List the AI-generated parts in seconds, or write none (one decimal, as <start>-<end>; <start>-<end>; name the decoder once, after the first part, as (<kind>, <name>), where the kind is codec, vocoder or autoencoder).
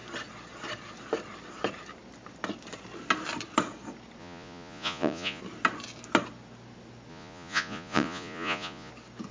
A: 4.2-5.4 (vocoder, Vocos); 7.1-8.9